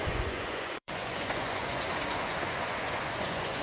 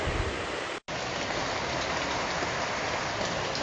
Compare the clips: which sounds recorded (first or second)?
second